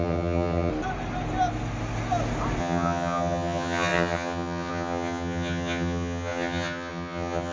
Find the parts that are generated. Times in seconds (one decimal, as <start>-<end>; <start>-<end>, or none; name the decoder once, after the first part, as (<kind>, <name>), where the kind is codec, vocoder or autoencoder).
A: 0.0-0.7 (vocoder, HiFi-GAN); 2.6-7.5